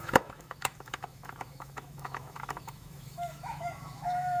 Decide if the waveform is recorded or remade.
remade